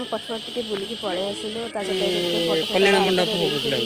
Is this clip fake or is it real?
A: fake